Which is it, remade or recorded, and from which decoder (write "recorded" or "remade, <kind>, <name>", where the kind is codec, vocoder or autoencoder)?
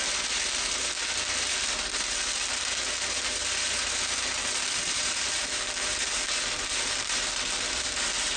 remade, vocoder, BigVGAN v2